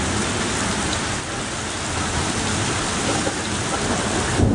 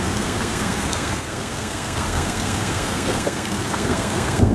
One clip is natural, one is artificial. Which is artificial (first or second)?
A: second